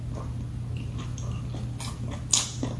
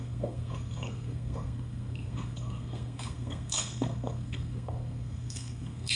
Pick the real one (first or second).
first